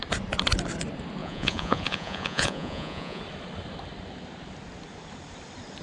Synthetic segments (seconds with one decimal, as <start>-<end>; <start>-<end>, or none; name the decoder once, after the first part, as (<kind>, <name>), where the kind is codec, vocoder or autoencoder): 1.2-3.2 (vocoder, Vocos)